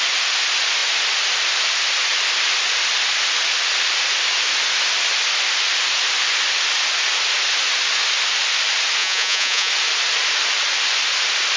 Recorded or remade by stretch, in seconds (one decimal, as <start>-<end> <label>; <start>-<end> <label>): 0.0-9.0 recorded; 9.0-9.7 remade; 9.7-11.6 recorded